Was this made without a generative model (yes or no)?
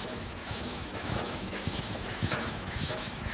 no